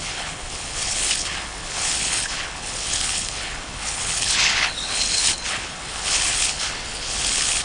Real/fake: fake